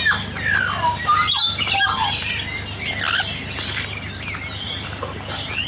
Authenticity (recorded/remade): recorded